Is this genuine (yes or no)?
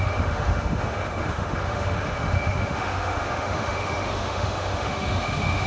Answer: no